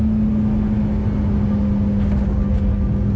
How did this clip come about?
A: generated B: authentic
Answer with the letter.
B